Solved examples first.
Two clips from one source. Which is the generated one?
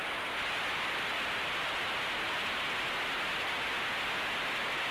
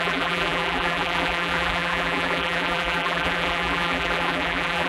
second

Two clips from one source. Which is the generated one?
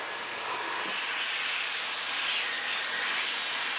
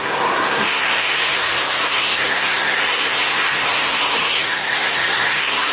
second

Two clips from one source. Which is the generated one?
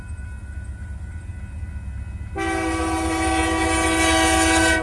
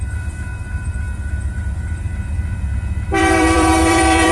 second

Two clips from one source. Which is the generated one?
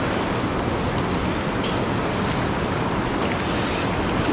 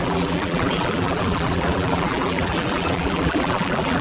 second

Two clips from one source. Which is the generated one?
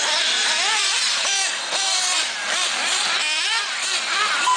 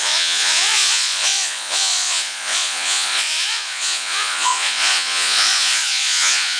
second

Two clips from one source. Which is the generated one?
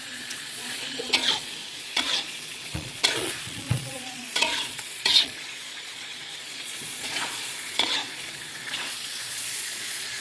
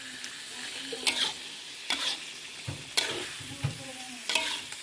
first